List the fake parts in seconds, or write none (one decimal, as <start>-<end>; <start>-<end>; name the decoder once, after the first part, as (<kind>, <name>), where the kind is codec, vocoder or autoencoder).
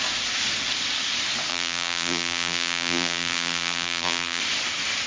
1.5-4.4 (vocoder, BigVGAN v2)